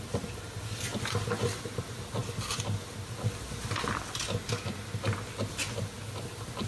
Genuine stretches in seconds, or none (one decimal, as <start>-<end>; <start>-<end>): 0.0-6.7